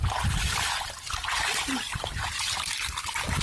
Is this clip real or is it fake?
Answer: real